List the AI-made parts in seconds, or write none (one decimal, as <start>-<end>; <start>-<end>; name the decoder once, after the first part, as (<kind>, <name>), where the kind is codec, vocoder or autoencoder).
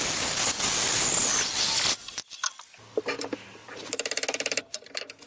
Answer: 3.6-5.3 (vocoder, BigVGAN v2)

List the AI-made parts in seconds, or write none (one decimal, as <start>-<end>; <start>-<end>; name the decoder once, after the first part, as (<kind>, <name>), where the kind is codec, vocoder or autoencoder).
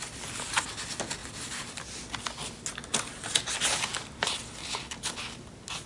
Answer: 4.6-5.2 (codec, HILCodec)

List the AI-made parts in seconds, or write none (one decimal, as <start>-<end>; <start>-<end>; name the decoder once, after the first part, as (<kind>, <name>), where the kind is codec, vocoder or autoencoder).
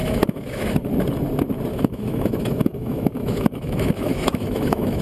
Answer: 0.0-0.9 (autoencoder, DAC-VAE); 1.7-5.0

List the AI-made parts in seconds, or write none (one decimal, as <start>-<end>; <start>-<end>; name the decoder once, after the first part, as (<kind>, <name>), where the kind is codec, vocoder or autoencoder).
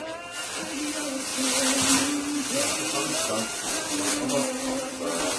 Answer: none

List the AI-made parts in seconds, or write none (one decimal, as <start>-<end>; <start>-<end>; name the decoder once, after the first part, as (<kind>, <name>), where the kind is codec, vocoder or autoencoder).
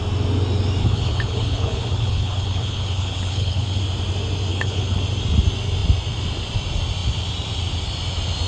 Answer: 0.8-3.8 (codec, HILCodec); 4.5-5.0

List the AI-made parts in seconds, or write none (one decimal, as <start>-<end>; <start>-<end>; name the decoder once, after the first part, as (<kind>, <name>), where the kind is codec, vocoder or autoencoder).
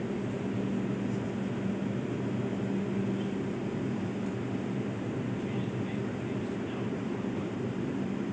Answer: 3.6-8.3 (vocoder, BigVGAN v2)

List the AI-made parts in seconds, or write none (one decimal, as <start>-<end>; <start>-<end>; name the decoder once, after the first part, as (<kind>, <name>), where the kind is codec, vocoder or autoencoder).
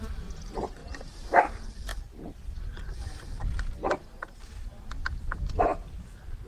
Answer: none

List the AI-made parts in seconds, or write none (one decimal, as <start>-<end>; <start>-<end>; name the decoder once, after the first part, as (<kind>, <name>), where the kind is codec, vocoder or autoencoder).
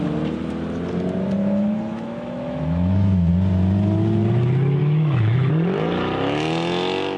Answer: 1.4-3.3 (autoencoder, DAC-VAE); 4.8-5.5